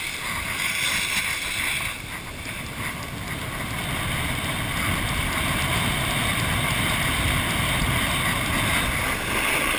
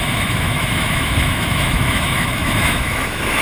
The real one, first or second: first